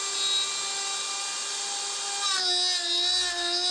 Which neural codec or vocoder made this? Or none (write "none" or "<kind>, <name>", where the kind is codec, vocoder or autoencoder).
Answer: none